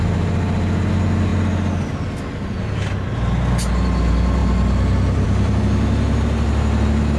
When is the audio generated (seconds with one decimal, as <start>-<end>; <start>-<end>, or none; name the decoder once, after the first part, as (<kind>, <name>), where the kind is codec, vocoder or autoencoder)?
4.4-5.6 (vocoder, BigVGAN v2)